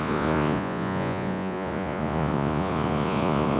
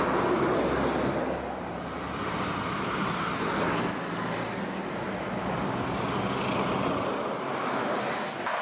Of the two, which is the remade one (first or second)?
first